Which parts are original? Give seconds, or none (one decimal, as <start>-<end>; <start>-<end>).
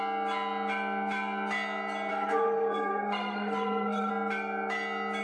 0.0-2.1; 4.1-5.2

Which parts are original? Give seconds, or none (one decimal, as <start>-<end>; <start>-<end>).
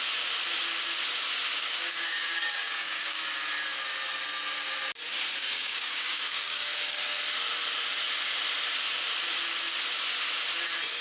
0.0-1.6; 3.2-5.4; 7.2-11.0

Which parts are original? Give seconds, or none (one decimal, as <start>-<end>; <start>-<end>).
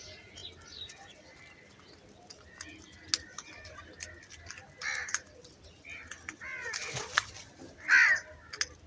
0.0-8.9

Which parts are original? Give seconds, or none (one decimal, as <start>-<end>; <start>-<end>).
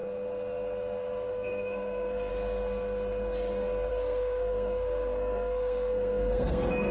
0.0-1.3; 2.3-3.9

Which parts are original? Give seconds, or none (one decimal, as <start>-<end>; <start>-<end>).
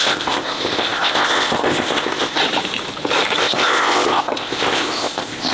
2.4-3.4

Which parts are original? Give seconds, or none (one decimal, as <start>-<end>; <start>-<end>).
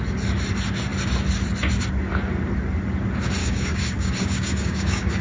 0.0-3.4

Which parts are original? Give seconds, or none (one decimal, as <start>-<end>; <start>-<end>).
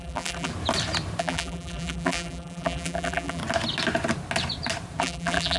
0.5-1.2; 3.4-5.0